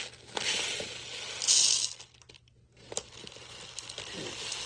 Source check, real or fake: real